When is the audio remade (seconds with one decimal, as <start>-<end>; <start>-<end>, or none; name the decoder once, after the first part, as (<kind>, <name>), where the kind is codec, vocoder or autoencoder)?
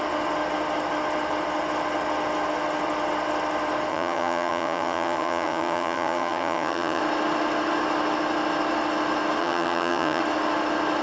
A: 3.9-7.0 (vocoder, HiFi-GAN); 9.4-10.2